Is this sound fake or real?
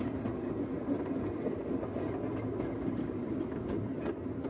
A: real